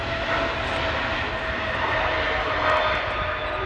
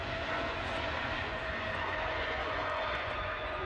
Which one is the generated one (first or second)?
second